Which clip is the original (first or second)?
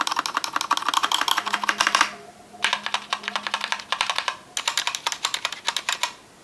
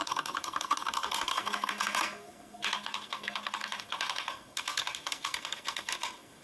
first